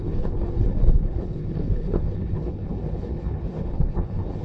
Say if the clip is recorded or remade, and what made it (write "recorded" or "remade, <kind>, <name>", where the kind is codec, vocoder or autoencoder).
remade, codec, HILCodec